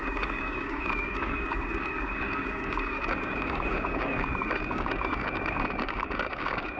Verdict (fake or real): fake